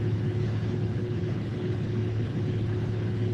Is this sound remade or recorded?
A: remade